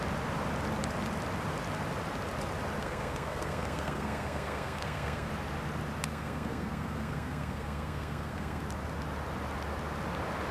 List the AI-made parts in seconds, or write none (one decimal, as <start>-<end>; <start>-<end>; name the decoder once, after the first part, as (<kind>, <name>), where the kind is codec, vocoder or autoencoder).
2.8-5.3 (codec, SNAC); 6.1-8.6